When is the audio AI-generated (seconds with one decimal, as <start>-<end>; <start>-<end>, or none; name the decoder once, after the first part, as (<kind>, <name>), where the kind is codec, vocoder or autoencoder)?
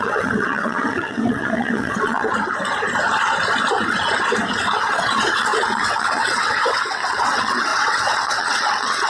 0.0-2.3 (vocoder, WaveNeXt); 4.8-9.1